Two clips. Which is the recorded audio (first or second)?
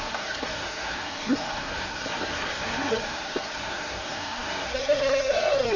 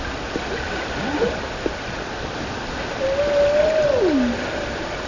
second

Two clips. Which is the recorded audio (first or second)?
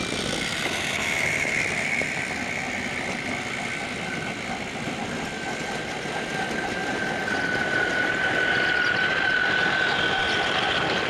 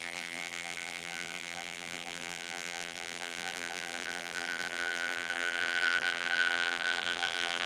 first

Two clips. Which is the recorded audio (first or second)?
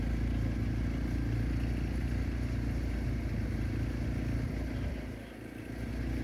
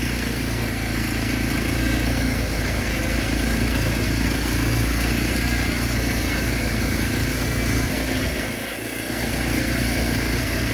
first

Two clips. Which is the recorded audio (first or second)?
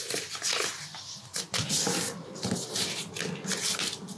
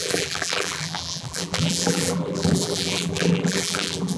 first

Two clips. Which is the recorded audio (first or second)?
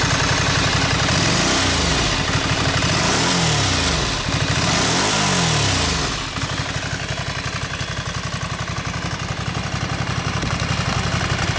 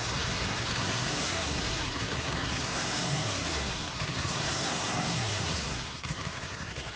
first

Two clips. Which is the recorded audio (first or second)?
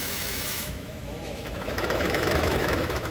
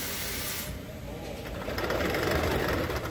second